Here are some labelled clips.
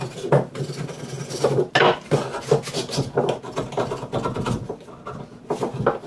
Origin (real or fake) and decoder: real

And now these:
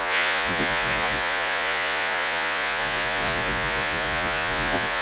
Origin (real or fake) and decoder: fake, vocoder, Vocos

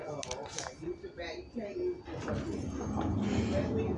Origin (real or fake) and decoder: real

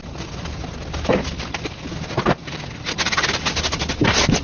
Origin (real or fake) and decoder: real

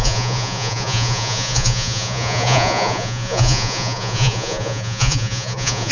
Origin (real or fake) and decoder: fake, vocoder, Vocos